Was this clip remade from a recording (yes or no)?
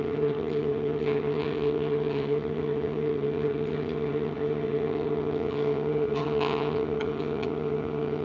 yes